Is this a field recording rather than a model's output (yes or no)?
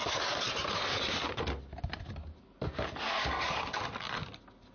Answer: yes